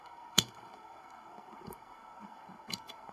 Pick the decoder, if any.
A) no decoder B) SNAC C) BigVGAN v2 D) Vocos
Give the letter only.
B